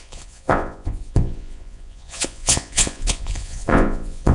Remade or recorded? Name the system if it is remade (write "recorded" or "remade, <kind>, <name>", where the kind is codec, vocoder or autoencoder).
remade, vocoder, Vocos